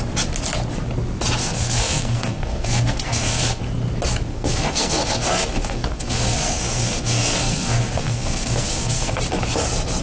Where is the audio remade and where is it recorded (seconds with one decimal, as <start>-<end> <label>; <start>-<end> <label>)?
0.0-1.4 recorded; 1.4-3.6 remade; 3.6-4.3 recorded; 4.3-9.1 remade; 9.1-10.0 recorded